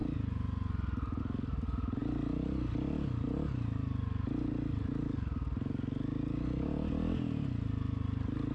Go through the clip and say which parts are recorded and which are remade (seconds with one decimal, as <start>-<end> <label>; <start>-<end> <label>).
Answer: 0.0-8.5 recorded

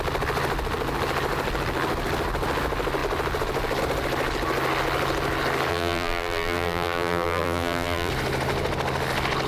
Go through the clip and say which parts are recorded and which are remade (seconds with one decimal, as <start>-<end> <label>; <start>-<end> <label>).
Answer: 0.0-5.7 recorded; 5.7-8.1 remade; 8.1-9.5 recorded